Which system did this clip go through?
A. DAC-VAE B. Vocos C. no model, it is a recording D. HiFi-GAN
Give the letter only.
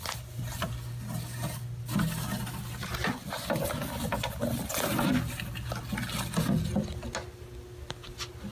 C